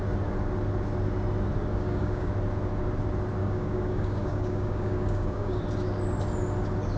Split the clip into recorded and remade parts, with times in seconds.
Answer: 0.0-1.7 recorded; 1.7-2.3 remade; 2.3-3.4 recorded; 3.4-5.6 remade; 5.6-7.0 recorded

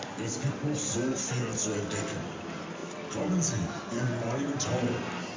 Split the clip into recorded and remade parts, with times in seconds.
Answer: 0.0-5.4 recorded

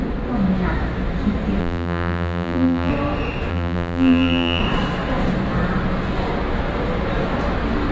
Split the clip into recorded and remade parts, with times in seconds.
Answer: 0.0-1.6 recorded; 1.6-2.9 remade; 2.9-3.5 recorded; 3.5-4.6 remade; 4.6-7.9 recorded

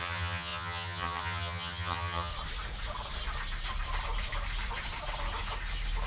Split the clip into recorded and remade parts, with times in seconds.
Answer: 0.0-2.3 remade; 2.3-6.1 recorded

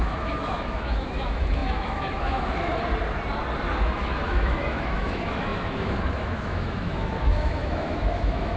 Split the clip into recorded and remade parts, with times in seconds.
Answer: 0.0-2.7 remade; 2.7-3.8 recorded; 3.8-8.6 remade

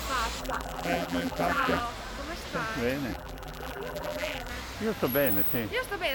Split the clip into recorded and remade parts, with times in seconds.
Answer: 0.0-0.4 recorded; 0.4-1.8 remade; 1.8-3.1 recorded; 3.1-4.5 remade; 4.5-6.1 recorded

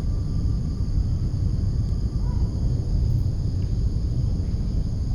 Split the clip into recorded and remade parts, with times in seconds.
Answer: 0.0-0.5 recorded; 0.5-1.9 remade; 1.9-2.4 recorded; 2.4-3.1 remade; 3.1-3.6 recorded; 3.6-4.3 remade; 4.3-5.1 recorded